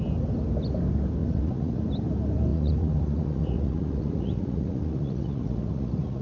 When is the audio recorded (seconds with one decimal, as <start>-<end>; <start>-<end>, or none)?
0.0-1.2; 1.8-2.5